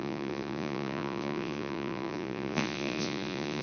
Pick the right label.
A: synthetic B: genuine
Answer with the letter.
A